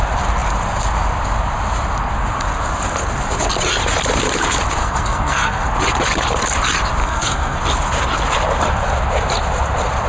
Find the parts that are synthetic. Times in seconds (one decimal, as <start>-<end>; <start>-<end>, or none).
4.8-5.7; 7.0-7.6